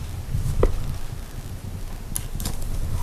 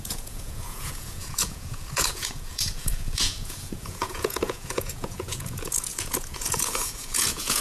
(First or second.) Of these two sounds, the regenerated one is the second